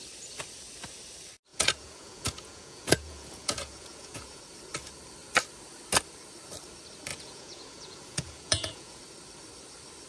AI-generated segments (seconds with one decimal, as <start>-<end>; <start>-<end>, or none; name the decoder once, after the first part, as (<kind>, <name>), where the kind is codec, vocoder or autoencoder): 1.5-4.4 (vocoder, Vocos); 7.1-9.0